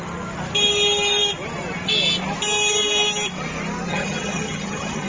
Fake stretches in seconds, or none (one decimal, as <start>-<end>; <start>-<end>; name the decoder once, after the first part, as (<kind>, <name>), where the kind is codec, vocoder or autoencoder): 3.9-5.1 (vocoder, HiFi-GAN)